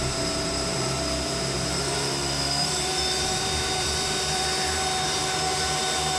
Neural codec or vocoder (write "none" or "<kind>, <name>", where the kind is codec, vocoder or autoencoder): vocoder, BigVGAN v2